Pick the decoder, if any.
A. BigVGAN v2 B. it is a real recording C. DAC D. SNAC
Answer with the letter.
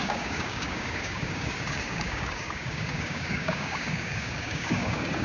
C